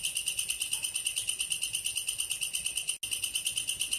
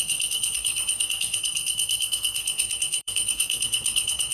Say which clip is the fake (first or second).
second